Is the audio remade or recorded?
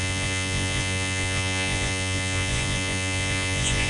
remade